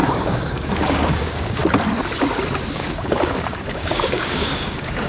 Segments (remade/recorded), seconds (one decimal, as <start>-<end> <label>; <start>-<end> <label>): 0.0-1.6 remade; 1.6-2.7 recorded; 2.7-5.1 remade